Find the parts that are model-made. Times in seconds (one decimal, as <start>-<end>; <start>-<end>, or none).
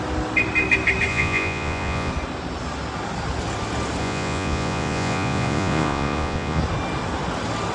1.1-2.1; 4.0-6.6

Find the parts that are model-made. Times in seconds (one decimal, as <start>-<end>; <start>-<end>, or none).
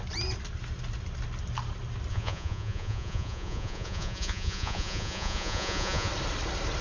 2.1-6.1